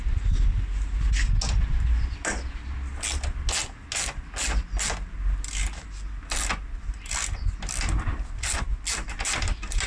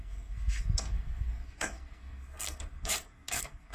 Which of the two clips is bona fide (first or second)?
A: first